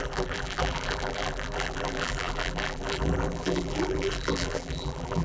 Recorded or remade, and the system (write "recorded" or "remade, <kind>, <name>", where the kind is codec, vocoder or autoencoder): remade, vocoder, BigVGAN v2